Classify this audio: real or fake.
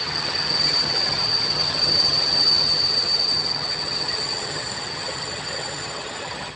fake